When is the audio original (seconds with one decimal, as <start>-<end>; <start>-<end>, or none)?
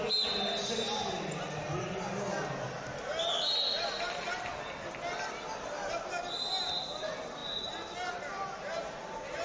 0.0-9.4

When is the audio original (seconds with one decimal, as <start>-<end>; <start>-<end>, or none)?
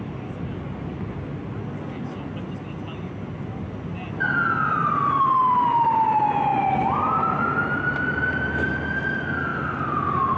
0.0-10.4